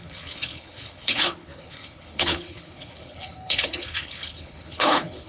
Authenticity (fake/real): fake